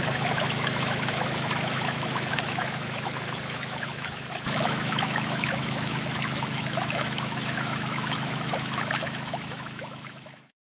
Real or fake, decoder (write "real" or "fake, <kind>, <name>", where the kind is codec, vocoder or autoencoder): fake, autoencoder, DAC-VAE